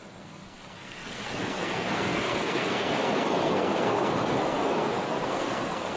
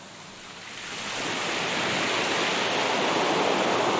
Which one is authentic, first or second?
second